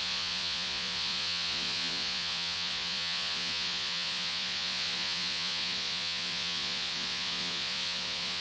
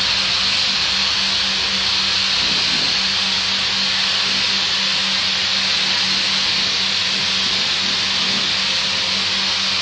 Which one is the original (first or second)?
second